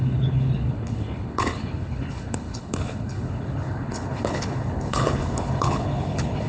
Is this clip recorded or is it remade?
remade